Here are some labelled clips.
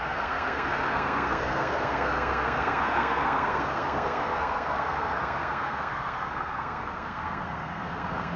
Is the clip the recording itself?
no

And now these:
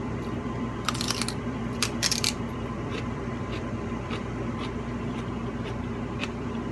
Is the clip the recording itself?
no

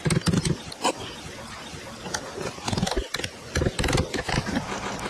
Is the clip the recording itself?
yes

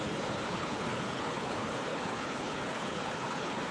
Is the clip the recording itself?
no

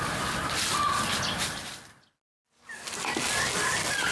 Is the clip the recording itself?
yes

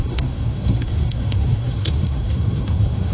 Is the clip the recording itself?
no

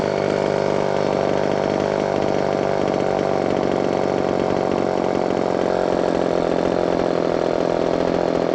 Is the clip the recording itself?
yes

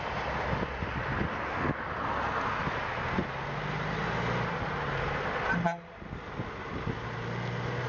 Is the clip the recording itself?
yes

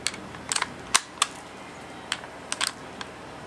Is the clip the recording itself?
yes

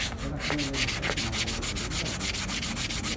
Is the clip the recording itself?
yes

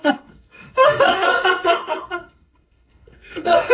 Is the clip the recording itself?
no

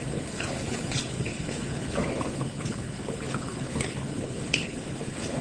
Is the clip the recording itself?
no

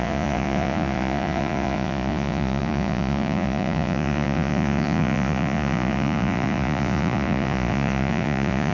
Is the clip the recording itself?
no